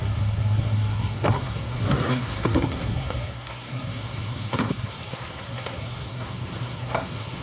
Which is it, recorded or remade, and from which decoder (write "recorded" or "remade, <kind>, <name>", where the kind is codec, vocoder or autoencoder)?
remade, codec, SNAC